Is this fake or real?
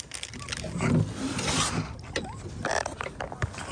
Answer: real